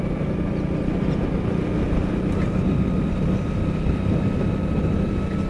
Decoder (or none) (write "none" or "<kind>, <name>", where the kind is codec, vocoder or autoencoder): none